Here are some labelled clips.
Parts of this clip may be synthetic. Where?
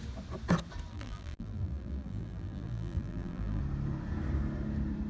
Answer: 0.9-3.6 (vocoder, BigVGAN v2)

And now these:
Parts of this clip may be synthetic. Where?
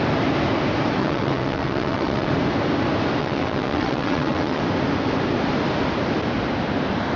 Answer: 1.0-2.3 (vocoder, WaveNeXt); 3.2-4.6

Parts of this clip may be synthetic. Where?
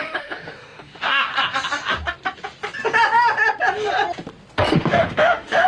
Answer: 0.0-1.3 (autoencoder, DAC-VAE); 4.7-5.7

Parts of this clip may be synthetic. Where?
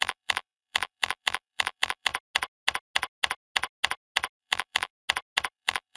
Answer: 0.0-2.1 (vocoder, BigVGAN v2); 4.4-4.9; 5.5-6.0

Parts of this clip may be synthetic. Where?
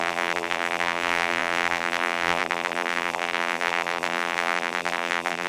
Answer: 0.0-5.5 (vocoder, BigVGAN v2)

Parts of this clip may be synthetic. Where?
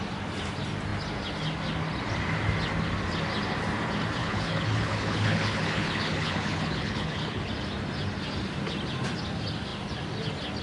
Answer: 4.2-7.5 (codec, HILCodec)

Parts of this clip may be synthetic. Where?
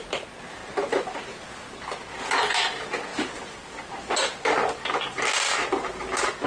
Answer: none